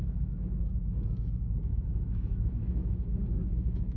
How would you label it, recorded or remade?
remade